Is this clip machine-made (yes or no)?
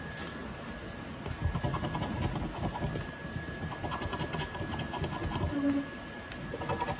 no